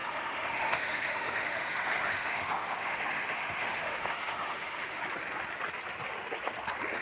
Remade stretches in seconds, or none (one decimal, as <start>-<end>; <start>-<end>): 0.0-5.0